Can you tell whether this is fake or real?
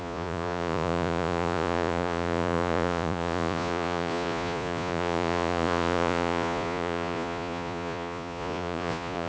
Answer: fake